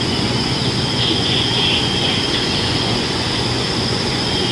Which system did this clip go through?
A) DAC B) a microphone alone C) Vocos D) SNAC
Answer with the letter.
C